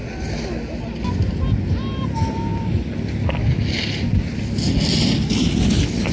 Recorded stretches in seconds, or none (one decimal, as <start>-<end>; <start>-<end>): 0.0-6.1